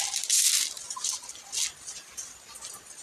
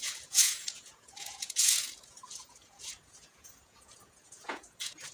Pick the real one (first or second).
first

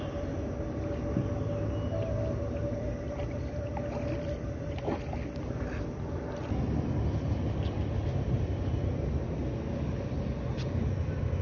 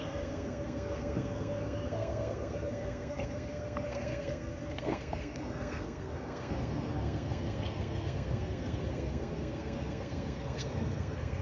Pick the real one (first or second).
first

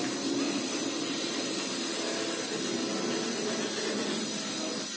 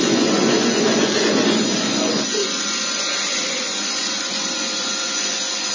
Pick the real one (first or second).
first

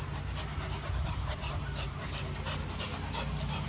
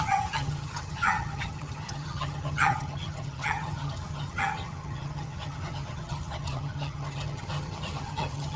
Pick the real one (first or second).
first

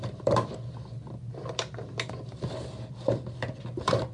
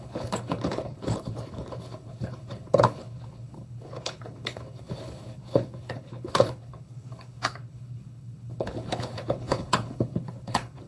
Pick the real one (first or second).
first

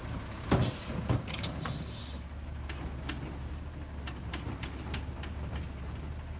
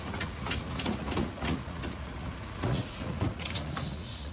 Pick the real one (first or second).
first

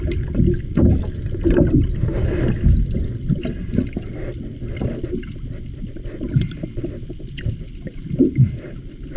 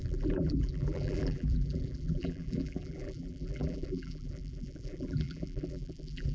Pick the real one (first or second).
first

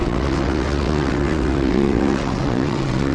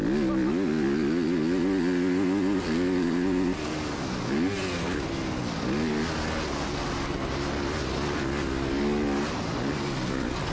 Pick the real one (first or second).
second